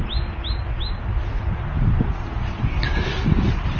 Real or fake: real